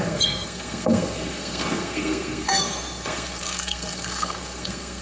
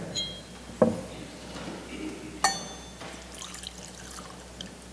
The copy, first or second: first